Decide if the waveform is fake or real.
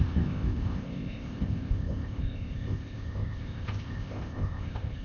fake